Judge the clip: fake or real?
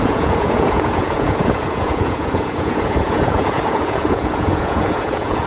fake